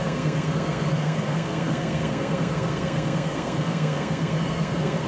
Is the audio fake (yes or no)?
yes